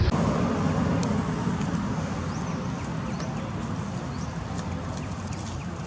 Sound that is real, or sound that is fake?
real